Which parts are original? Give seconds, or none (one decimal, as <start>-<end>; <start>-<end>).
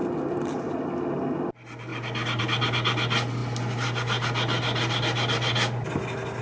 0.0-6.4